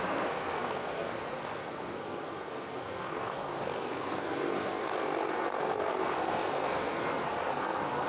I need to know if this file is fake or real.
fake